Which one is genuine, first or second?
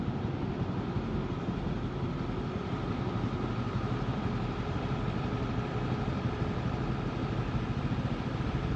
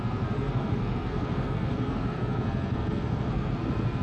first